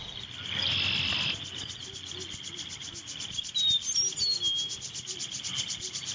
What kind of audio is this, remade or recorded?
recorded